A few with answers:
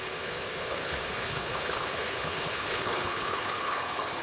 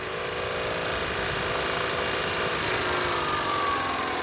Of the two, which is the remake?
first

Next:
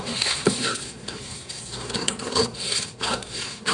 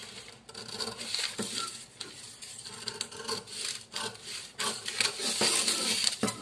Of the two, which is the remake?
first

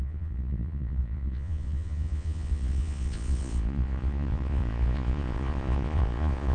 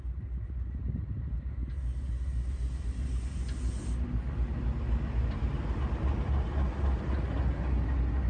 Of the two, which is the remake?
first